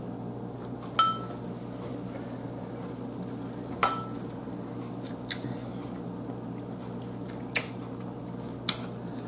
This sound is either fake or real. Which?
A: real